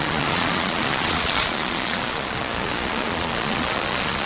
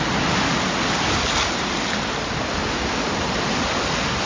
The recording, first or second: second